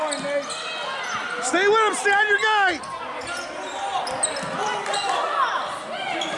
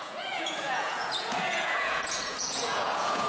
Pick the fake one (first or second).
second